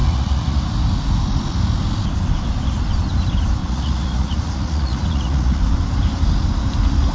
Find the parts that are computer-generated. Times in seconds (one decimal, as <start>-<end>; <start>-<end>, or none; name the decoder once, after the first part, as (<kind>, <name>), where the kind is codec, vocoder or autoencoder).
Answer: 0.0-0.6 (vocoder, Vocos); 3.6-5.6